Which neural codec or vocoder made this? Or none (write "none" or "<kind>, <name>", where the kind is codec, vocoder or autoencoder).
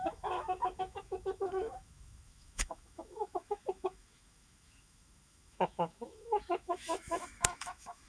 autoencoder, DAC-VAE